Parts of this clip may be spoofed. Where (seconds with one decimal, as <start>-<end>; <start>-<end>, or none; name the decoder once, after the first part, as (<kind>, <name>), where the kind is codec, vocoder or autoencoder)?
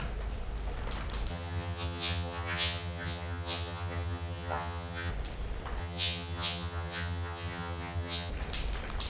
1.3-5.1 (vocoder, HiFi-GAN); 5.8-8.3